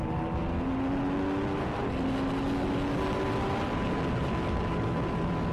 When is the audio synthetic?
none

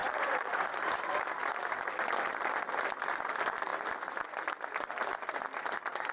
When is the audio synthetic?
0.0-1.1

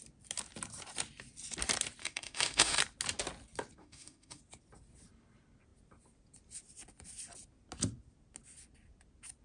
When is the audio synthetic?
2.0-2.8; 3.8-4.4

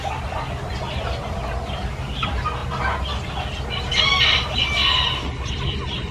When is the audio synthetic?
none